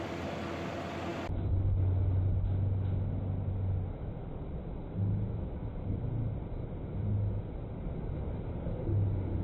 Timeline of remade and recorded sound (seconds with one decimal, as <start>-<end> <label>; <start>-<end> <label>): 0.0-9.4 recorded